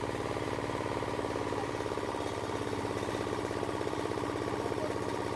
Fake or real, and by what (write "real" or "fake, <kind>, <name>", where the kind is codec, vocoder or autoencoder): fake, vocoder, BigVGAN v2